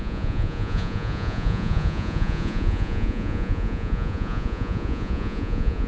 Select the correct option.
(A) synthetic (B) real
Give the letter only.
A